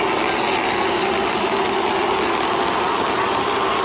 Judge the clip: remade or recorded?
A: recorded